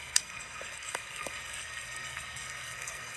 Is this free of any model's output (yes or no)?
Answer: no